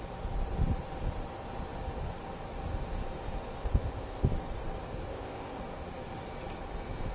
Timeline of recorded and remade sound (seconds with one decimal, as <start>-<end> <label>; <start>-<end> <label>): 0.0-3.6 recorded; 3.6-4.3 remade; 4.3-5.1 recorded; 5.1-5.6 remade; 5.6-7.1 recorded